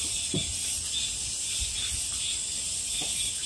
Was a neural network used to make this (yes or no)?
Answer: no